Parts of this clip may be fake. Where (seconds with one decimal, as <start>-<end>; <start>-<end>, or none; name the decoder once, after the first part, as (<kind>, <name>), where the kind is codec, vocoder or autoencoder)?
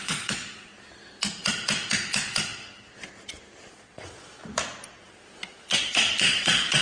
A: 0.0-0.7 (vocoder, Vocos); 3.7-4.4; 5.0-6.8